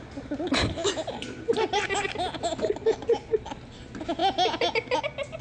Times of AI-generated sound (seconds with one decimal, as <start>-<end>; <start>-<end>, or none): none